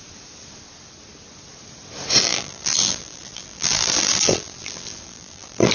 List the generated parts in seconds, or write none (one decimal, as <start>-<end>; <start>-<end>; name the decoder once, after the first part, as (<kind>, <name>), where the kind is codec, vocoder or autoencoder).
2.2-5.7 (vocoder, BigVGAN v2)